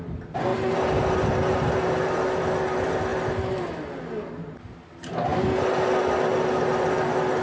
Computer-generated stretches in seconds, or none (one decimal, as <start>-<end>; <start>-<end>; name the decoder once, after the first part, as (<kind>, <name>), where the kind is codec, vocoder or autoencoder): none